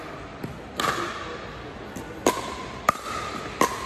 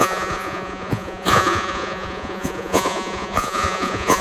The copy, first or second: second